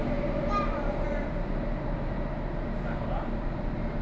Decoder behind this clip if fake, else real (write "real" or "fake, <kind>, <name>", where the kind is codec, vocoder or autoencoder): real